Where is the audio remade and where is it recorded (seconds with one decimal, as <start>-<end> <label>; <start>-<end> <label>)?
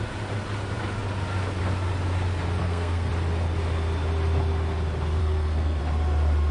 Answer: 0.0-2.6 recorded; 2.6-3.1 remade; 3.1-5.2 recorded; 5.2-5.8 remade; 5.8-6.5 recorded